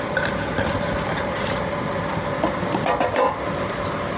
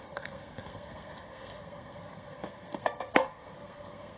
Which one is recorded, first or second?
first